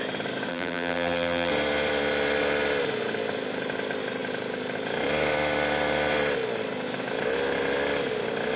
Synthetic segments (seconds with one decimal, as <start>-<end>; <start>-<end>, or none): 0.5-1.5